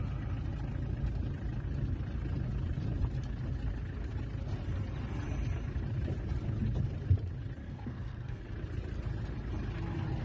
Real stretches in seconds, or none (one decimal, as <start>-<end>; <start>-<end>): 0.0-7.6; 8.4-10.2